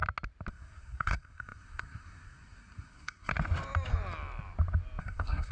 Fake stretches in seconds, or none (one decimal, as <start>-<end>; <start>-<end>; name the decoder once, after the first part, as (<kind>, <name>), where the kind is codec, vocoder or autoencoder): 0.5-3.3 (codec, SNAC); 5.0-5.5